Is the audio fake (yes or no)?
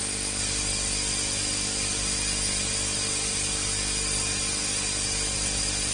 no